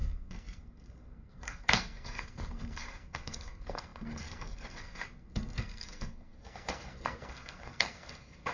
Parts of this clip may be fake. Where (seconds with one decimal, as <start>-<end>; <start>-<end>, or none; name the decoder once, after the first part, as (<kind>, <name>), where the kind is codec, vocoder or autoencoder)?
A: 0.0-8.5 (codec, SNAC)